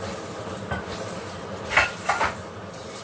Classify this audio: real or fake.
fake